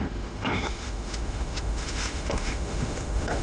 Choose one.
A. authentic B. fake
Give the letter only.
B